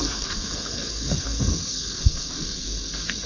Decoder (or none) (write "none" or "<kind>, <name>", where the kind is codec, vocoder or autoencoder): codec, SNAC